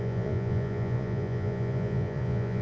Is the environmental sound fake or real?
fake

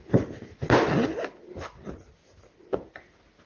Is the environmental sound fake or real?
real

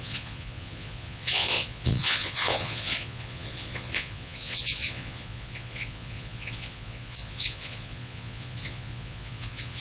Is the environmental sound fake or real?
fake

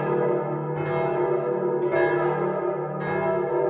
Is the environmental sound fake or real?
real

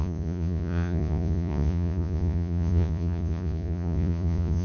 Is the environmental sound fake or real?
fake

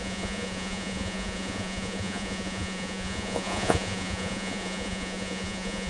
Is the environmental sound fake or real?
fake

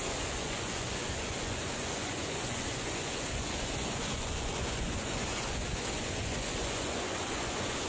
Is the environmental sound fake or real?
fake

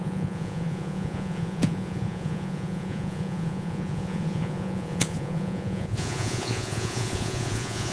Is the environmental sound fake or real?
fake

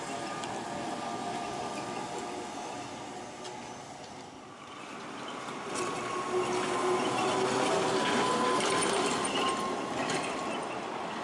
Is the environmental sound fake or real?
real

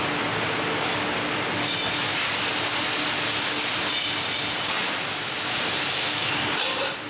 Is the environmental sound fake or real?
real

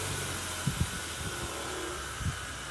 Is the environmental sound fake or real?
real